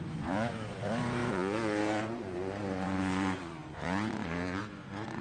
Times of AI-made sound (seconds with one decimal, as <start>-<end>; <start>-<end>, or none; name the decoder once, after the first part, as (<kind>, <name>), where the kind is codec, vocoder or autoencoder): 0.0-5.2 (vocoder, Vocos)